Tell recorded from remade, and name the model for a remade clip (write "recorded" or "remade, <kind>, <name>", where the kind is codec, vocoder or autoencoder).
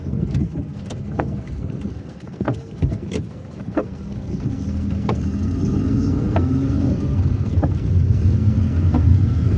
remade, codec, SNAC